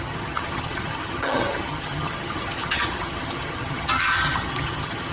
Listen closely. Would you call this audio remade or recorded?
remade